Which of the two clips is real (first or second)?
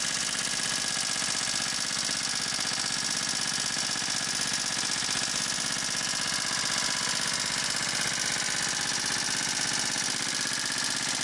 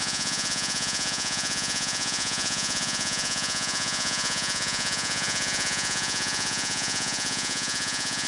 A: first